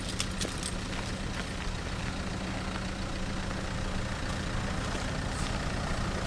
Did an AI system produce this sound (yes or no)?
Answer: no